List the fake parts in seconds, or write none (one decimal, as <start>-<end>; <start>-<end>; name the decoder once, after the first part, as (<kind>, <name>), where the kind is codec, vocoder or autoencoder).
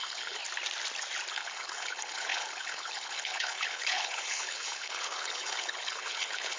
0.0-0.4 (codec, HILCodec); 1.3-6.6